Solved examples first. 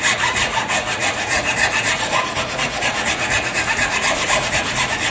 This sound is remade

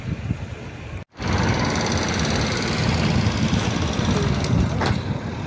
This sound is recorded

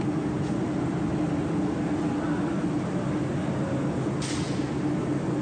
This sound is recorded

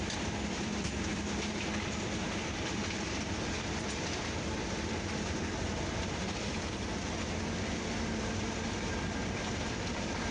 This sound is remade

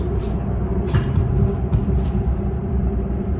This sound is remade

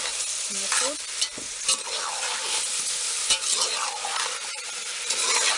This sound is recorded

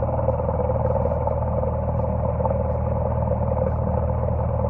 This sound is recorded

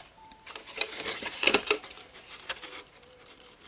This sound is remade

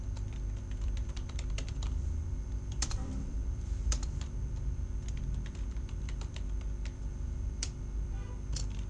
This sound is remade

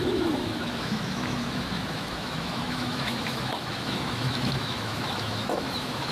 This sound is remade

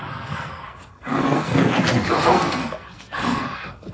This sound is remade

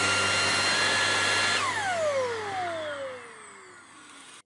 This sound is recorded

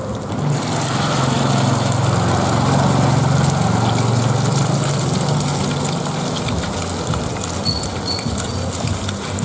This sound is recorded